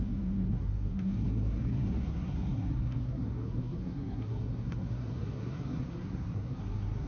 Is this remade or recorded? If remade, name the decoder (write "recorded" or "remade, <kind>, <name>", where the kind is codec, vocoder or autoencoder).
remade, codec, SNAC